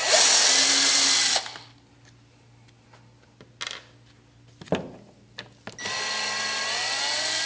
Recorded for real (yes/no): yes